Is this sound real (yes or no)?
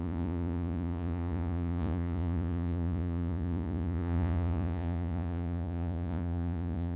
no